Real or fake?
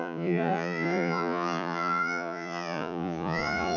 fake